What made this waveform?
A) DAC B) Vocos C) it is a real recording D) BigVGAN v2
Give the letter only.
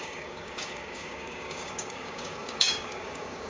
A